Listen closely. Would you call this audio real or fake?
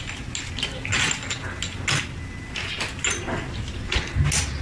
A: real